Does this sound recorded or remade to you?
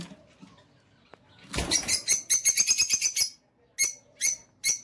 recorded